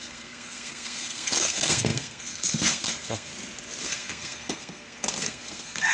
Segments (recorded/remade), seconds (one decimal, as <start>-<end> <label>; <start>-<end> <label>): 0.0-3.3 remade; 3.3-3.8 recorded; 3.8-5.9 remade